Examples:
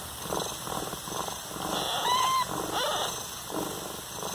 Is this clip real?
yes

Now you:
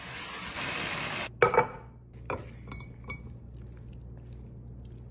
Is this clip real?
yes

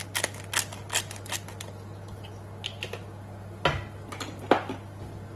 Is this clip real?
yes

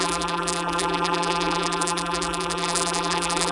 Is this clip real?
no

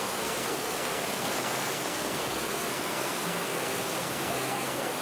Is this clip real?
no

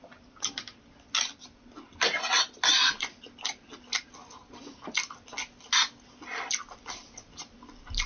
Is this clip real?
yes